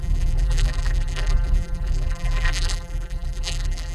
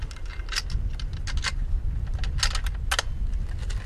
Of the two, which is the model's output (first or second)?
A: first